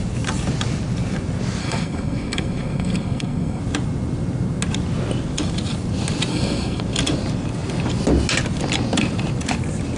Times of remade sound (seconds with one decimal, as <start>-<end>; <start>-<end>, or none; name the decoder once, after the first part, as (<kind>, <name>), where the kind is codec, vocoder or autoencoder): 1.6-3.6 (codec, SNAC); 6.3-6.8